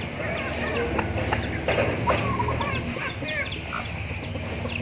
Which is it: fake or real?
real